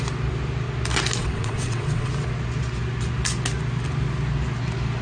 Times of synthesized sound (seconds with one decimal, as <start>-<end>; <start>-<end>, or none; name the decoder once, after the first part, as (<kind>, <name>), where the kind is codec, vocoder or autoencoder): 1.2-2.1 (vocoder, WaveNeXt)